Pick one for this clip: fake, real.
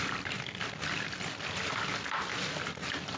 real